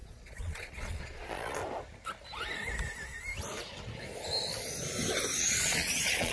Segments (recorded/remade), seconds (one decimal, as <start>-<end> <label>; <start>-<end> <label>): 0.0-1.6 remade; 1.6-5.4 recorded; 5.4-6.3 remade

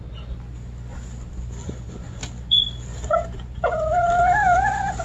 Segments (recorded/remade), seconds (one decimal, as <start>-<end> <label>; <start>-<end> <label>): 0.0-1.6 recorded; 1.6-2.2 remade; 2.2-5.0 recorded

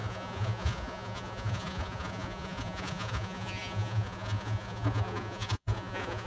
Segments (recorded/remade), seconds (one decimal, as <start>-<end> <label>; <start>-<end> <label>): 0.0-6.3 remade